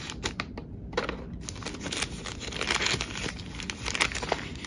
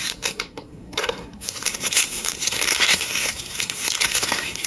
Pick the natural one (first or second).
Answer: first